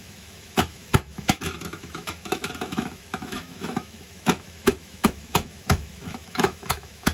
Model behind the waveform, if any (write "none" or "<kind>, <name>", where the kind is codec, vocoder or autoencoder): autoencoder, DAC-VAE